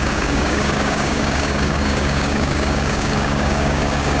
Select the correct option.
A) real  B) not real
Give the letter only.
B